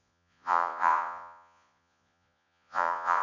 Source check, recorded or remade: remade